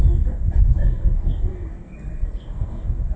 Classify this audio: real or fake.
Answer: fake